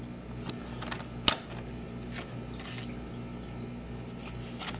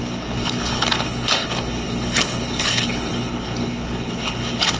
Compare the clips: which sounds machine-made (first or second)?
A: second